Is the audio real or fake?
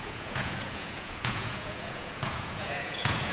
fake